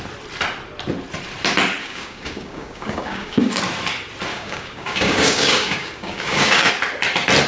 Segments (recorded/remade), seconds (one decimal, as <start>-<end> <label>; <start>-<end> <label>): 0.0-1.8 recorded; 1.8-3.6 remade; 3.6-4.3 recorded; 4.3-6.7 remade; 6.7-7.5 recorded